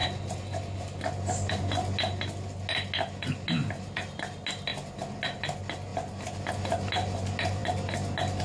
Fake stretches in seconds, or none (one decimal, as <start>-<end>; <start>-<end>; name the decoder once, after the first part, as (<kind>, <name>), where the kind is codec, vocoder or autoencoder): none